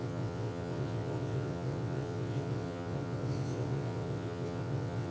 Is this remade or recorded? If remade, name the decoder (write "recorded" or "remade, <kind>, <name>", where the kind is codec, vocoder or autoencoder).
remade, vocoder, WaveNeXt